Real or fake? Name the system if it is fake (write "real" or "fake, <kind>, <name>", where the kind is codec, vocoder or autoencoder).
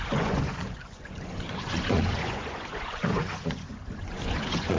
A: fake, vocoder, Vocos